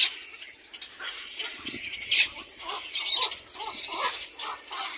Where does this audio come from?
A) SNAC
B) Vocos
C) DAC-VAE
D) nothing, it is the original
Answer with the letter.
D